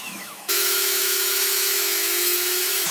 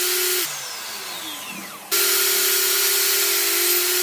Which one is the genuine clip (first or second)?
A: second